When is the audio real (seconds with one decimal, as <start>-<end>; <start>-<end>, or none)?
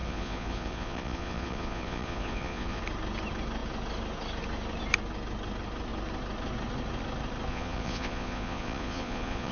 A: 2.8-7.5